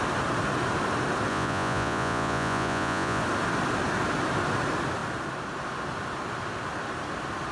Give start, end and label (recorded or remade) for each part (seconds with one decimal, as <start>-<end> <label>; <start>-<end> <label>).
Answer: 0.0-1.3 recorded; 1.3-3.2 remade; 3.2-7.5 recorded